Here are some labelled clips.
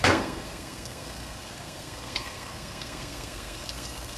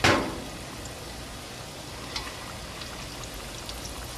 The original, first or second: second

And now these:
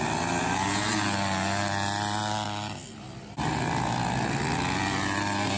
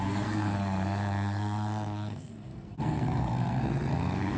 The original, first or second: first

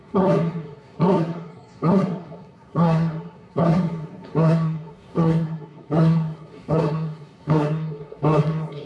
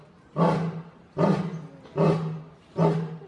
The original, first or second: second